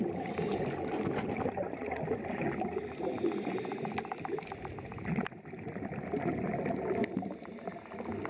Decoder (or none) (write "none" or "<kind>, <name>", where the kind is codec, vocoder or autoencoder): none